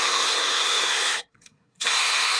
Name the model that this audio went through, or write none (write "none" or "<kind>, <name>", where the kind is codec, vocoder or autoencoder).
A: codec, SNAC